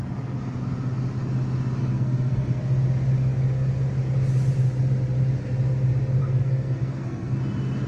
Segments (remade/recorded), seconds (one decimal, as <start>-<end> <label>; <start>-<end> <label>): 0.0-1.8 recorded; 1.8-2.6 remade; 2.6-6.2 recorded; 6.2-7.4 remade; 7.4-7.9 recorded